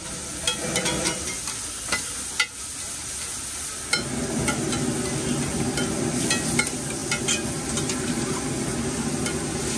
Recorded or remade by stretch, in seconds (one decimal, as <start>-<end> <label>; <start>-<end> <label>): 0.0-9.8 recorded